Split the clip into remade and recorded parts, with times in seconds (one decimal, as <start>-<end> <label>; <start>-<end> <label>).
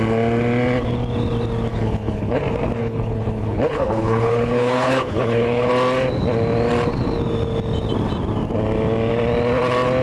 0.0-1.7 recorded; 1.7-2.4 remade; 2.4-2.8 recorded; 2.8-5.7 remade; 5.7-10.0 recorded